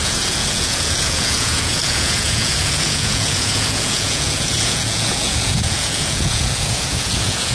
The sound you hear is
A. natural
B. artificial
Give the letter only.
B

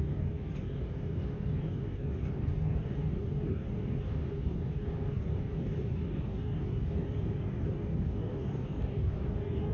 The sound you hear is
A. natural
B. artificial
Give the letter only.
B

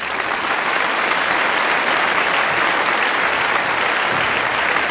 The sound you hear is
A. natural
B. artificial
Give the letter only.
A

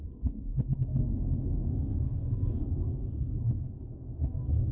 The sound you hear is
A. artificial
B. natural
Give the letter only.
A